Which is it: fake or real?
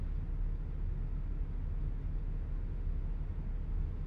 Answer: real